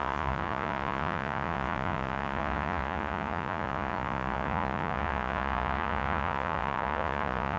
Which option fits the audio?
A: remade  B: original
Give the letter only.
A